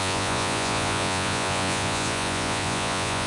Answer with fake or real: fake